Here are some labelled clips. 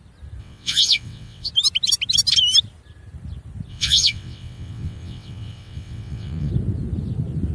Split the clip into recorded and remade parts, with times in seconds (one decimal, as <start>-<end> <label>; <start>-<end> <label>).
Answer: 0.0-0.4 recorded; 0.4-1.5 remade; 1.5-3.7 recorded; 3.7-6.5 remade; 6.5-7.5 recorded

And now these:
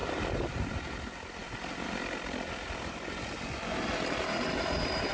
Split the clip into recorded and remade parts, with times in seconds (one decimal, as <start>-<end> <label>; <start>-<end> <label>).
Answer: 0.0-5.1 recorded

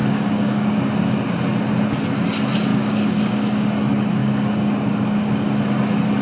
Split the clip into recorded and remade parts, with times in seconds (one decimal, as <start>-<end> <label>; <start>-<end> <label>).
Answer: 0.0-0.8 remade; 0.8-2.7 recorded; 2.7-3.7 remade; 3.7-4.2 recorded; 4.2-5.6 remade; 5.6-6.2 recorded

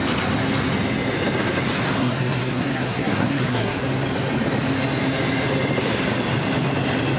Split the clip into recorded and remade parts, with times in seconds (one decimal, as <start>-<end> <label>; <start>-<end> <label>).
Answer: 0.0-2.0 recorded; 2.0-3.8 remade; 3.8-7.2 recorded

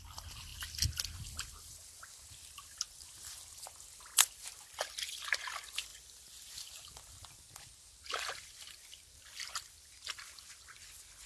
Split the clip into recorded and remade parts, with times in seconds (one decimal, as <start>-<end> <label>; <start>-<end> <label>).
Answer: 0.0-11.3 recorded